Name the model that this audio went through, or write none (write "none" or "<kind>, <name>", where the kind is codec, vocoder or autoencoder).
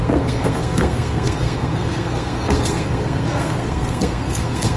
codec, SNAC